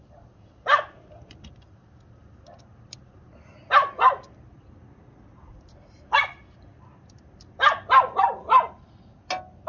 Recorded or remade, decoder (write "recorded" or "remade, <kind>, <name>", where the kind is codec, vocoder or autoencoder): recorded